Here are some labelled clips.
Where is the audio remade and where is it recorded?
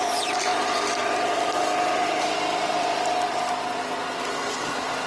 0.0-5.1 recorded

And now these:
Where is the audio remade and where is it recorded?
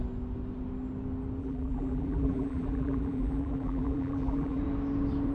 0.0-1.4 recorded; 1.4-4.6 remade; 4.6-5.3 recorded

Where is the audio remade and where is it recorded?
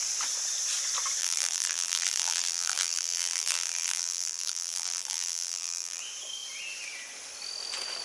0.0-1.2 recorded; 1.2-6.0 remade; 6.0-8.0 recorded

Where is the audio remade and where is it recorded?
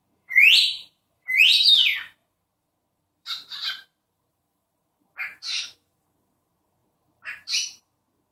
0.0-1.4 remade; 1.4-1.9 recorded; 1.9-5.1 remade; 5.1-6.8 recorded; 6.8-7.8 remade; 7.8-8.3 recorded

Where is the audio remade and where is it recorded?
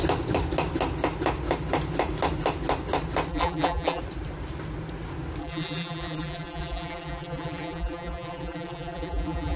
0.0-3.3 recorded; 3.3-4.0 remade; 4.0-5.4 recorded; 5.4-9.6 remade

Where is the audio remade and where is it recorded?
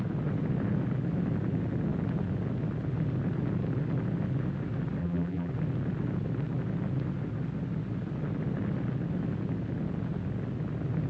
0.0-5.0 recorded; 5.0-5.5 remade; 5.5-11.1 recorded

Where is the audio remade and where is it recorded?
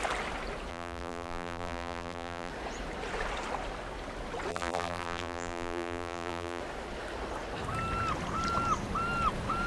0.0-0.7 recorded; 0.7-2.5 remade; 2.5-4.5 recorded; 4.5-6.6 remade; 6.6-9.7 recorded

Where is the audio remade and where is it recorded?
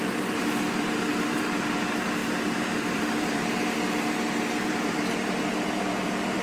0.0-2.2 remade; 2.2-2.8 recorded; 2.8-3.5 remade; 3.5-4.6 recorded; 4.6-6.4 remade